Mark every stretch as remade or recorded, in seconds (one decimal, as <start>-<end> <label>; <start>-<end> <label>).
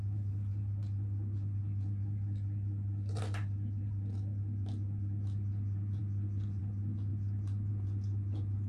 0.0-8.7 recorded